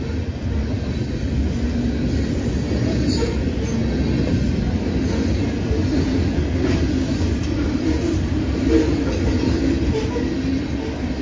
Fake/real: real